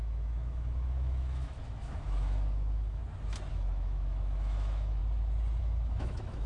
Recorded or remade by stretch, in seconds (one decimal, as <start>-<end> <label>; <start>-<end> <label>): 0.0-3.0 remade; 3.0-3.5 recorded; 3.5-5.0 remade; 5.0-5.6 recorded; 5.6-6.5 remade